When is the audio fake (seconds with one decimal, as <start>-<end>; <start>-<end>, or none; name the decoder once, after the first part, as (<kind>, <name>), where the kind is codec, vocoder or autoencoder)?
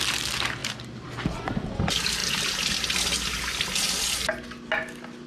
0.6-1.3 (vocoder, BigVGAN v2)